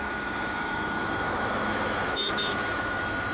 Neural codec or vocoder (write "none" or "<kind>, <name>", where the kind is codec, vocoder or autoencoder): autoencoder, DAC-VAE